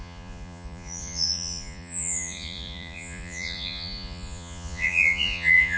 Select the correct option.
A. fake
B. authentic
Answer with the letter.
A